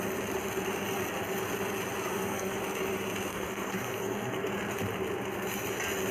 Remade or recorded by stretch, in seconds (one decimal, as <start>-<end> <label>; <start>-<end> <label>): 0.0-2.1 recorded; 2.1-2.6 remade; 2.6-3.3 recorded; 3.3-4.5 remade; 4.5-6.1 recorded